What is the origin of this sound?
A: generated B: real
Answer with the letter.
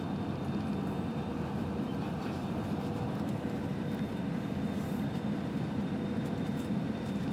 B